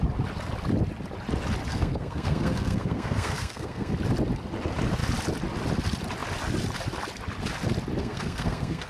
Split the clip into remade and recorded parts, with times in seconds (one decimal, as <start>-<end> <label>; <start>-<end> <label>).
0.0-1.7 recorded; 1.7-3.9 remade; 3.9-8.0 recorded; 8.0-8.9 remade